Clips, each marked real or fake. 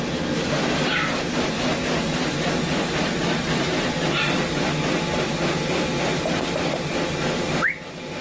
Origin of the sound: real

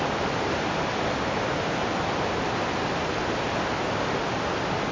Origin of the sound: real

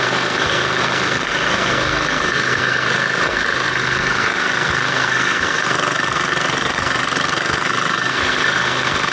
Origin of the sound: fake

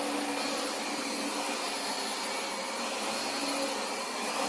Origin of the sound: real